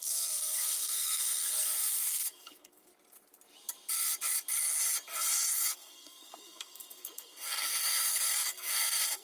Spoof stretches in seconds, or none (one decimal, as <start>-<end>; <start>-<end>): 0.0-2.9; 5.7-9.2